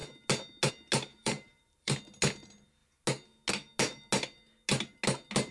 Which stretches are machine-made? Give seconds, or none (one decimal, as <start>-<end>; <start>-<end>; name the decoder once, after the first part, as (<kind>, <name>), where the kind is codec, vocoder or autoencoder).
1.1-2.0 (vocoder, BigVGAN v2)